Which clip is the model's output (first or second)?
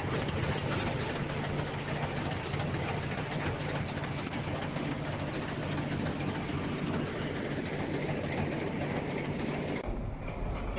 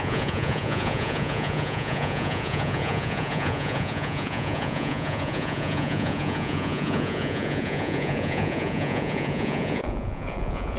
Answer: second